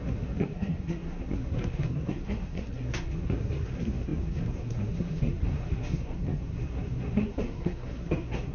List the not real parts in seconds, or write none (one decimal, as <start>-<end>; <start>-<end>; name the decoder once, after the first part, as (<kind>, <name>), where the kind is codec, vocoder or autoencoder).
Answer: 0.0-8.5 (codec, SNAC)